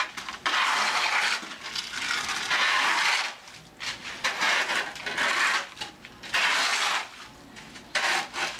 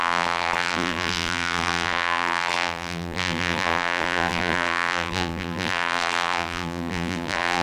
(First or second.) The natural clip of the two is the first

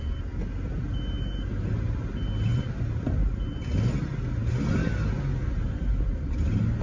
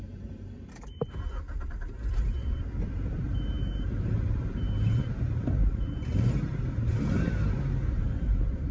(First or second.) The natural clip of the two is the first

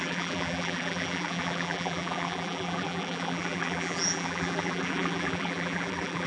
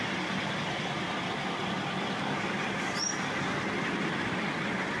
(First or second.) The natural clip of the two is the second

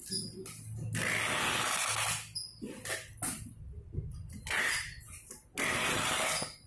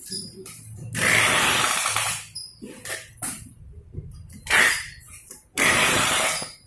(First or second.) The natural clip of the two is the first